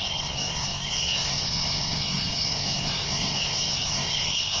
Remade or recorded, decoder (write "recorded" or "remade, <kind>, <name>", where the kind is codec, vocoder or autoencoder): remade, codec, SNAC